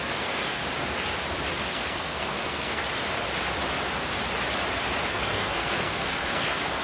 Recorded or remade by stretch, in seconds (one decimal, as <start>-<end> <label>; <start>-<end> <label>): 0.0-0.6 remade; 0.6-1.6 recorded; 1.6-2.8 remade; 2.8-5.1 recorded; 5.1-6.8 remade

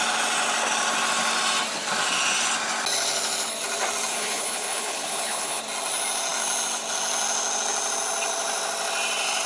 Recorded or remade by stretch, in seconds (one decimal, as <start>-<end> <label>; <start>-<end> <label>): 0.0-4.1 recorded; 4.1-5.6 remade; 5.6-9.5 recorded

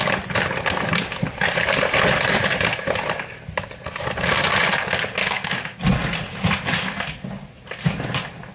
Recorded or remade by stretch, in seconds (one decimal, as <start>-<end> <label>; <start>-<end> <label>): 0.0-5.2 recorded; 5.2-5.8 remade; 5.8-8.5 recorded

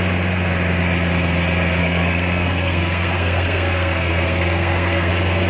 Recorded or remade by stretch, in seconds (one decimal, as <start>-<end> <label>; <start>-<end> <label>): 0.0-1.8 recorded; 1.8-5.1 remade; 5.1-5.5 recorded

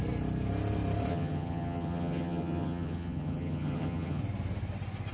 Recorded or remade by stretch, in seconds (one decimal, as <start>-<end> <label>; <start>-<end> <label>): 0.0-1.1 recorded; 1.1-4.2 remade; 4.2-5.1 recorded